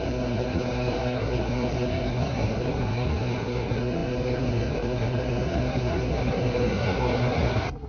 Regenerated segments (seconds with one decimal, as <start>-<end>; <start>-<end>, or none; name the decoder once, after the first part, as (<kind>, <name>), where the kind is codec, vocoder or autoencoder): 0.0-7.9 (codec, SNAC)